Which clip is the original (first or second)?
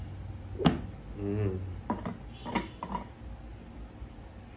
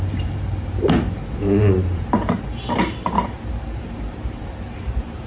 first